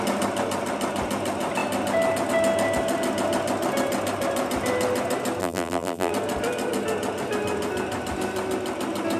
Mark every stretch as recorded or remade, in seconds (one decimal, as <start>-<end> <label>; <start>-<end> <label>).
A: 0.0-5.4 recorded; 5.4-6.1 remade; 6.1-9.2 recorded